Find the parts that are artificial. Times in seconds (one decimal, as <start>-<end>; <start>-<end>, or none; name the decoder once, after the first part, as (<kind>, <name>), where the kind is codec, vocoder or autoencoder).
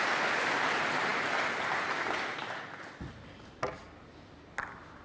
none